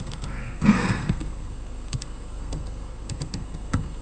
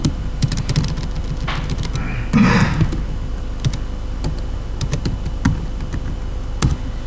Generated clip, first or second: first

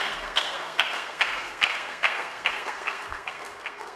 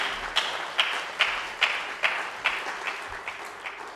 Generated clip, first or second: first